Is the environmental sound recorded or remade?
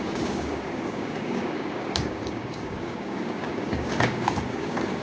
remade